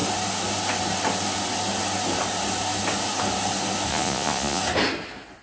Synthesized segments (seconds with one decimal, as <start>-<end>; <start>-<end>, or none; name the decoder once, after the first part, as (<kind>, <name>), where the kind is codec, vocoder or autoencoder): 3.9-4.6 (vocoder, Vocos)